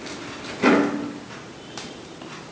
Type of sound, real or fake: real